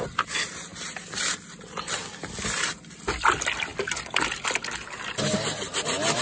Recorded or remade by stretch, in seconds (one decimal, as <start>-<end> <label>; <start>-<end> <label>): 0.0-6.2 recorded